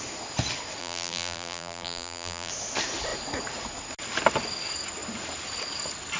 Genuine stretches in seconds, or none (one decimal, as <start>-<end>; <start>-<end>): 0.0-0.8; 2.5-6.2